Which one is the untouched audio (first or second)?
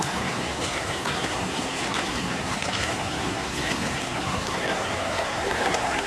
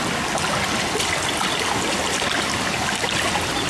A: second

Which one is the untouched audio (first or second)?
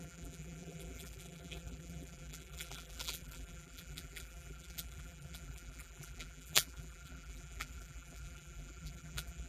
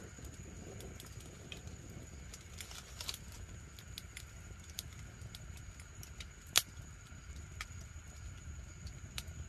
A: second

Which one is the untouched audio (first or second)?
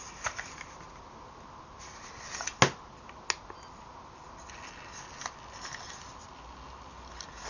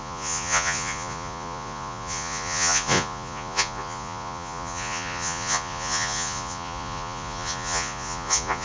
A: first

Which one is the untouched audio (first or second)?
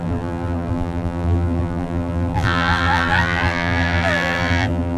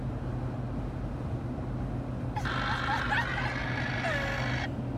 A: second